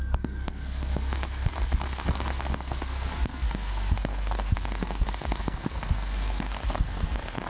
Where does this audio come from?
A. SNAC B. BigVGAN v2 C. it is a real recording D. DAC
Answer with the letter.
A